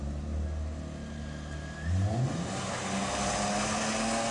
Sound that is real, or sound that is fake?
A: real